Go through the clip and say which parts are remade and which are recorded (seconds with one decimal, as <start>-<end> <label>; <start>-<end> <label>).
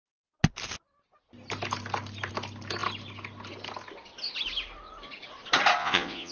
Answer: 0.0-5.8 recorded; 5.8-6.3 remade